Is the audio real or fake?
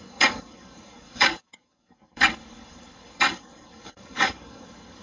fake